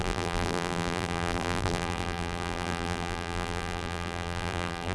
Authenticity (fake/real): fake